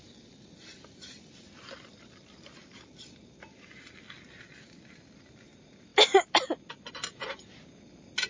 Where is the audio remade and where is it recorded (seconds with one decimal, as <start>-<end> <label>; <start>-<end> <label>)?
0.0-8.3 recorded